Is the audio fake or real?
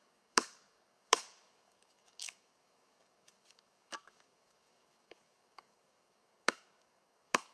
fake